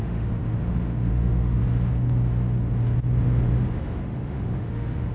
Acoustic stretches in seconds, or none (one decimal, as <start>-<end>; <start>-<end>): 0.4-1.1; 1.6-3.7